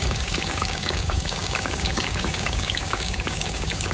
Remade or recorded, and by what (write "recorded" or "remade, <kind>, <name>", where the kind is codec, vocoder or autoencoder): remade, codec, DAC